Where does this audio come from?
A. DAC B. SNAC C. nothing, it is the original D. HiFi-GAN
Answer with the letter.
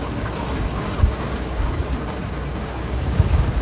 A